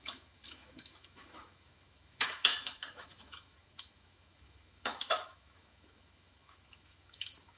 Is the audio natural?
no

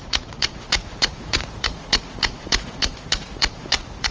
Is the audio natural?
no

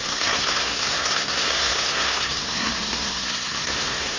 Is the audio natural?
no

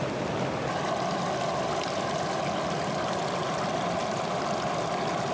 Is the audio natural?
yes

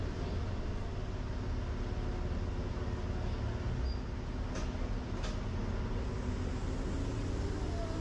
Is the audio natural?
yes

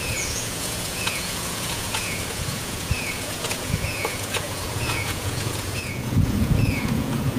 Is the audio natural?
no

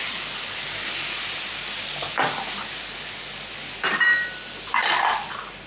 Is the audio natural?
yes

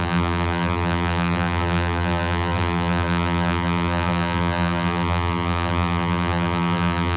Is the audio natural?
no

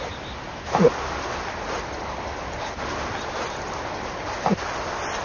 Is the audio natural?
yes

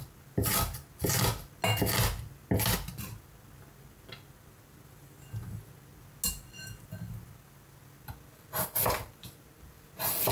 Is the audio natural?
yes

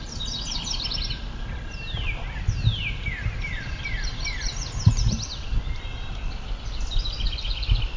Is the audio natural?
yes